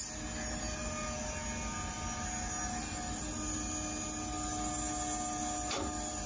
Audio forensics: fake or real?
real